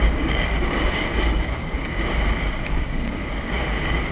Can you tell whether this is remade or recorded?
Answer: remade